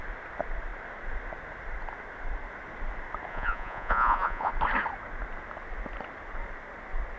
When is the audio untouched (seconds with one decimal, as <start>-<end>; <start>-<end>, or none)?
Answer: 0.0-3.3; 4.5-7.2